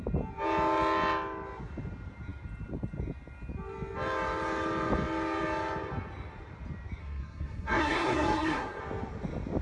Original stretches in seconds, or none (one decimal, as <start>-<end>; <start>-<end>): 0.0-7.0; 8.8-9.6